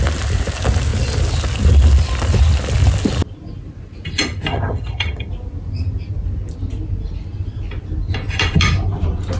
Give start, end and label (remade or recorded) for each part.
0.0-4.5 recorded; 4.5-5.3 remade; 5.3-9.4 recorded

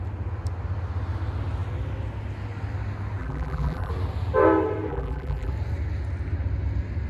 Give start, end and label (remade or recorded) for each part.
0.0-3.2 recorded; 3.2-3.9 remade; 3.9-4.9 recorded; 4.9-5.5 remade; 5.5-7.1 recorded

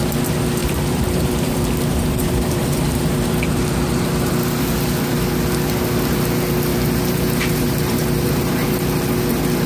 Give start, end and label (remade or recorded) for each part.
0.0-0.6 recorded; 0.6-4.3 remade; 4.3-6.7 recorded; 6.7-9.2 remade; 9.2-9.7 recorded

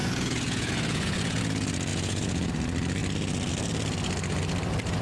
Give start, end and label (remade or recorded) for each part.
0.0-1.4 remade; 1.4-1.9 recorded; 1.9-2.5 remade; 2.5-5.0 recorded

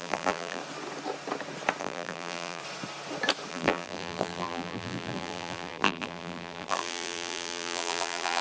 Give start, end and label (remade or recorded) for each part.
0.0-0.6 remade; 0.6-1.8 recorded; 1.8-2.6 remade; 2.6-3.5 recorded; 3.5-8.4 remade